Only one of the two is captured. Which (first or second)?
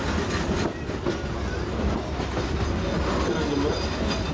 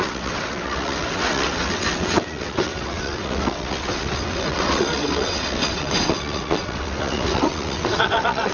first